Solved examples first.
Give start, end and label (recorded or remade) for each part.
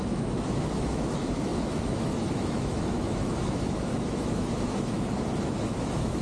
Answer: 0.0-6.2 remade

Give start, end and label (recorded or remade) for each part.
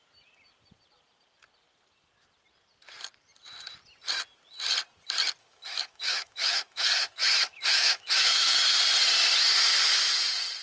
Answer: 0.0-5.4 recorded; 5.4-8.8 remade; 8.8-10.6 recorded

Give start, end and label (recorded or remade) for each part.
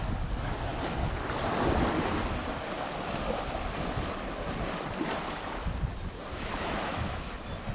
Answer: 0.0-6.3 recorded; 6.3-7.3 remade; 7.3-7.7 recorded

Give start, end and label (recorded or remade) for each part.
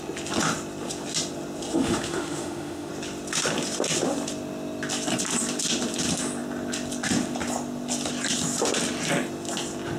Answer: 0.0-1.7 recorded; 1.7-2.9 remade; 2.9-10.0 recorded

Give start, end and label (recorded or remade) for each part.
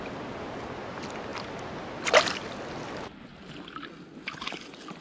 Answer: 0.0-5.0 recorded